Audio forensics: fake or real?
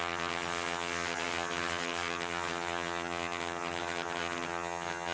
fake